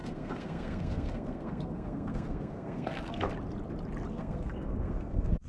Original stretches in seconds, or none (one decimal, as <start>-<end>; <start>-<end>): 3.3-4.1